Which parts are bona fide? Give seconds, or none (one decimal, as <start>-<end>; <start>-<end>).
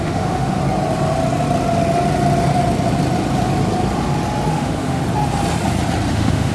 0.6-4.5; 5.0-6.1